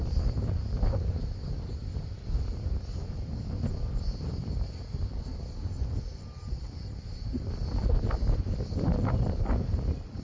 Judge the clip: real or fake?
fake